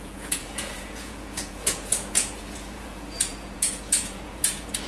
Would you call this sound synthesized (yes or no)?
yes